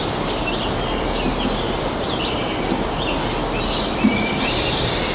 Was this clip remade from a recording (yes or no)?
no